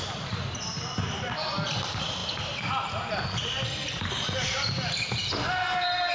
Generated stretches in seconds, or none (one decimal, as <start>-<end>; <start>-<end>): none